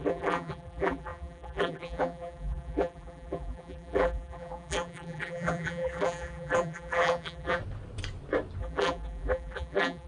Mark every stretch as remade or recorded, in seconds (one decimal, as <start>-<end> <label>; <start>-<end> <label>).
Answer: 0.0-7.6 remade; 7.6-8.6 recorded; 8.6-10.1 remade